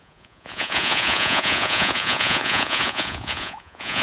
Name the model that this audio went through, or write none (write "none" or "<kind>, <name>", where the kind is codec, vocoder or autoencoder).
vocoder, Vocos